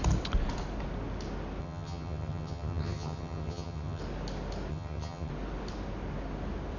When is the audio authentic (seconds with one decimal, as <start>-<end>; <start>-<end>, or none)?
0.0-1.6; 4.0-4.7; 5.3-6.8